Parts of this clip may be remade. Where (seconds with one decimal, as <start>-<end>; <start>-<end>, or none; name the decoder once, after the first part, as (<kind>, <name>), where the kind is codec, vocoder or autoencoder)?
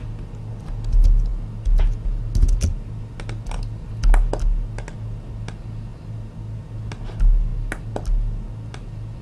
none